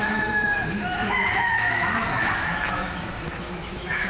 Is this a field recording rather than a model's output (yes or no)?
no